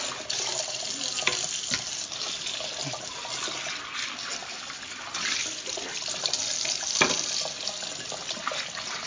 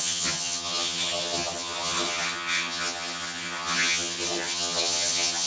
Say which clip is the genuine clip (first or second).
first